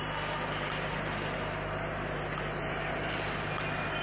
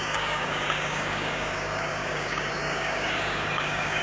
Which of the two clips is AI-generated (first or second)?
second